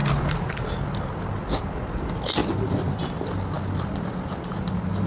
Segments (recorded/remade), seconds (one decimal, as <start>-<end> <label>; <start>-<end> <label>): 0.0-5.1 recorded